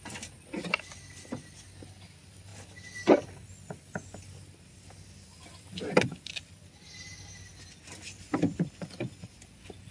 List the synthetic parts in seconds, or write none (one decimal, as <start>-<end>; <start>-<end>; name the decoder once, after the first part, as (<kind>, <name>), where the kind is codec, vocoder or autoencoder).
none